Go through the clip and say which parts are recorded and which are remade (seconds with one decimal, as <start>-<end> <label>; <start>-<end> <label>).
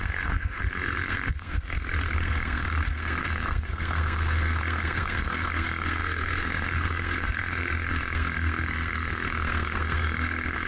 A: 0.0-10.7 remade